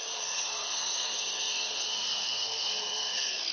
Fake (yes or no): yes